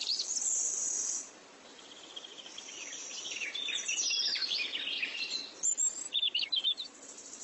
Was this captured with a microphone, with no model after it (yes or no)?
no